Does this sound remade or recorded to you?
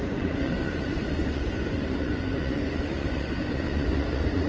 remade